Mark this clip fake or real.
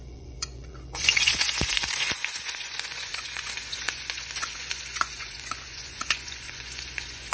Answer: fake